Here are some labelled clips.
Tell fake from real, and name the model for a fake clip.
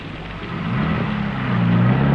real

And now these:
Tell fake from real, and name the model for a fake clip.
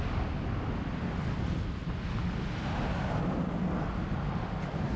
real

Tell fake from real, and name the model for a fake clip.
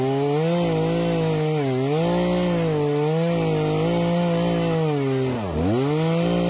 real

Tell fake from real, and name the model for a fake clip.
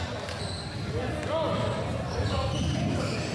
real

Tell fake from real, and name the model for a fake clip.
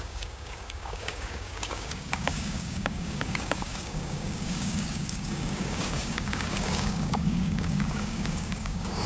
fake, codec, DAC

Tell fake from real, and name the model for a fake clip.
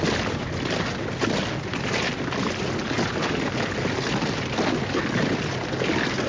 real